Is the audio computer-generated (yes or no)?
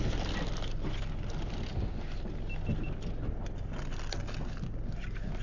no